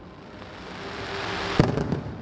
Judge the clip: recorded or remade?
recorded